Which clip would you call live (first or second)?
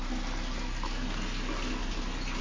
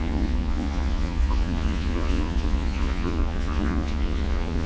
first